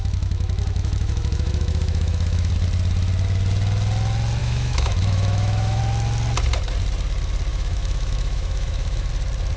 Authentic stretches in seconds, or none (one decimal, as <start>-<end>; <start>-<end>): 2.5-4.4; 5.8-7.5; 9.1-9.6

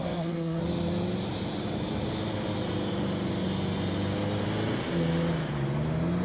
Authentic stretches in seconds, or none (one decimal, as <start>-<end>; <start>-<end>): 0.6-6.2

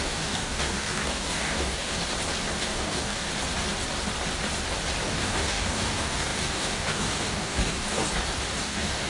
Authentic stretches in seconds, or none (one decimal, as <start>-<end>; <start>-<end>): 2.0-2.6; 3.3-5.1; 8.0-8.6

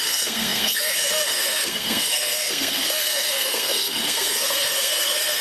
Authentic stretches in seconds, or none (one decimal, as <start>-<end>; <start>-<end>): none